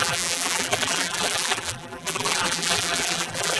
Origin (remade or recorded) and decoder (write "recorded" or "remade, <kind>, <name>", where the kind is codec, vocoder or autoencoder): remade, vocoder, BigVGAN v2